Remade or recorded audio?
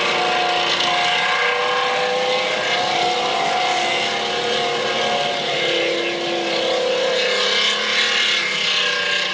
recorded